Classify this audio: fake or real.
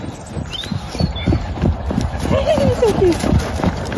real